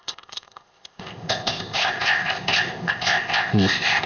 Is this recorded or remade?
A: remade